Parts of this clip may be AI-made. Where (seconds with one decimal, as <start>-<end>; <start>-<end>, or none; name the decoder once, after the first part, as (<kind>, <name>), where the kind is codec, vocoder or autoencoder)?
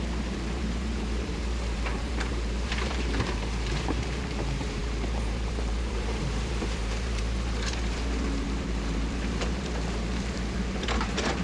0.0-11.4 (vocoder, BigVGAN v2)